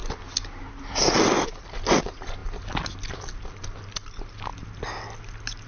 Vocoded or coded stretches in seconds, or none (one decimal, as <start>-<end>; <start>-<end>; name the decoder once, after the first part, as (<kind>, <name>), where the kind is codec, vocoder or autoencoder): none